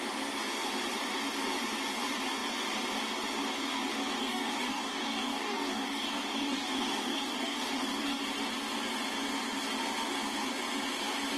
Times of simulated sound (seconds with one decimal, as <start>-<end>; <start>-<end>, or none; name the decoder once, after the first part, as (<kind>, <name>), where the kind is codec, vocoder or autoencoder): 4.2-8.2 (codec, DAC)